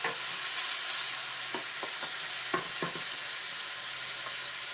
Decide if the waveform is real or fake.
real